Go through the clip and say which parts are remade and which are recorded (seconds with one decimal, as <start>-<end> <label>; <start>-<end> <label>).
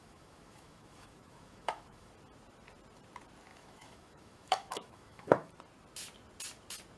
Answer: 0.0-2.1 remade; 2.1-3.5 recorded; 3.5-5.5 remade; 5.5-7.0 recorded